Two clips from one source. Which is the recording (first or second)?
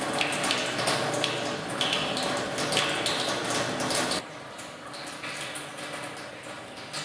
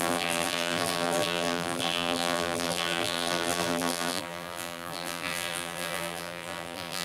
first